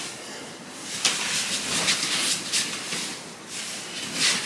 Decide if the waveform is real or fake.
real